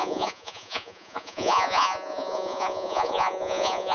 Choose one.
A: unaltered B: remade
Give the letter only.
B